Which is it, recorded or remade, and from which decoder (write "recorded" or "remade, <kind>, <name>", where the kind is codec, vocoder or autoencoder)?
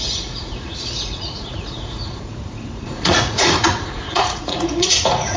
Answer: remade, vocoder, Vocos